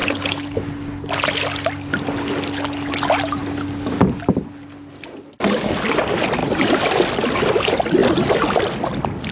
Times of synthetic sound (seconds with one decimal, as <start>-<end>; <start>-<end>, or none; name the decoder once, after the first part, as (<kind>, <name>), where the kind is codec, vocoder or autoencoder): 0.0-0.6 (codec, HILCodec)